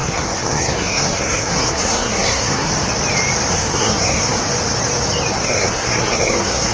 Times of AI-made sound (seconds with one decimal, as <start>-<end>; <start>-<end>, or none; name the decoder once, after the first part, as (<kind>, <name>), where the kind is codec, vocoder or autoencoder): 0.0-2.7 (codec, SNAC); 3.5-4.4; 5.3-6.7